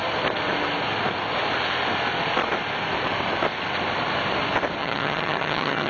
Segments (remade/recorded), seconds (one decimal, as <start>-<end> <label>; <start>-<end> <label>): 0.0-4.8 recorded; 4.8-5.9 remade